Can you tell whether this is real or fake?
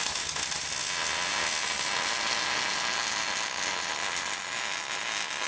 real